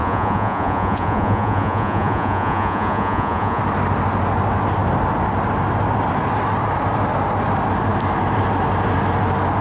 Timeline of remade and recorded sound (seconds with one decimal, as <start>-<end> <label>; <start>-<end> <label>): 0.0-3.6 remade; 3.6-9.6 recorded